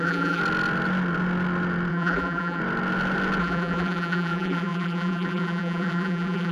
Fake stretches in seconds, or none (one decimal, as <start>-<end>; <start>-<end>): 0.0-0.4; 1.9-2.6; 3.4-6.5